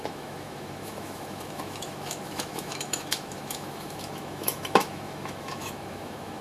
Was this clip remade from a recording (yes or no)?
yes